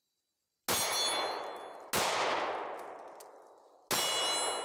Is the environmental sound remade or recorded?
recorded